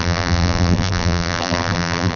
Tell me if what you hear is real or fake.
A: fake